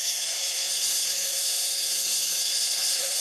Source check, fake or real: fake